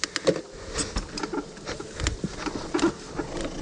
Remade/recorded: recorded